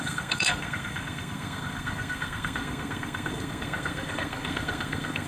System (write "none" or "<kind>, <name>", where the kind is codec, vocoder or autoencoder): codec, SNAC